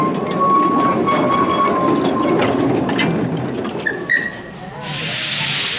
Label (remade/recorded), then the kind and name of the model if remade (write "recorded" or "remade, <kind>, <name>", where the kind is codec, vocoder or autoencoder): recorded